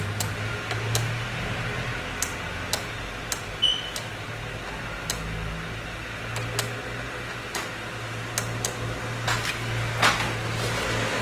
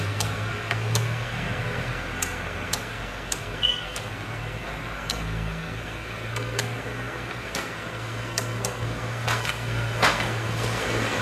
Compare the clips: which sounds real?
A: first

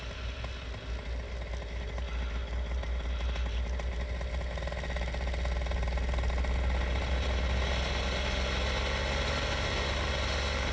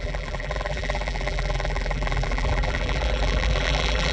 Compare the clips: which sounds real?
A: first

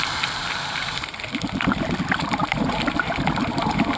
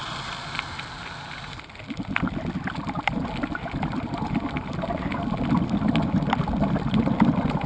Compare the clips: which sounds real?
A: second